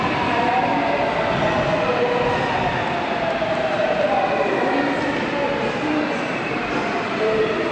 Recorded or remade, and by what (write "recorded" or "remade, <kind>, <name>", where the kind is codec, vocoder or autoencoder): recorded